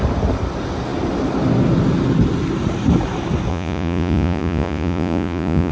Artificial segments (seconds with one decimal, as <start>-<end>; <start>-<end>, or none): 3.5-5.7